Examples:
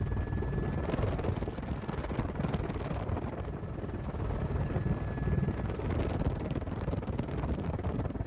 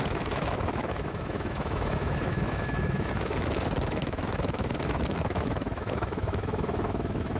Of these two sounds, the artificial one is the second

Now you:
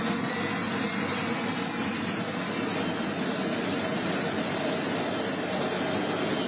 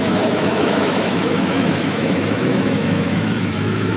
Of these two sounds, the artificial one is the second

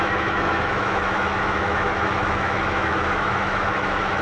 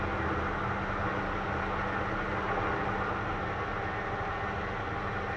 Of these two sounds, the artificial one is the first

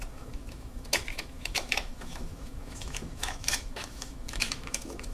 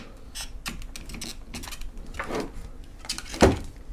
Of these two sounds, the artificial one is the first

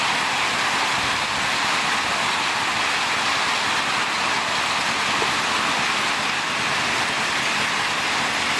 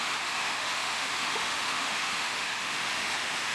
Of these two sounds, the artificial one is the second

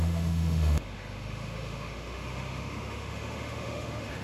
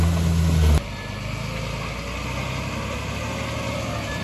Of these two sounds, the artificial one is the first